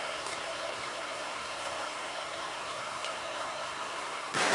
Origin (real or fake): fake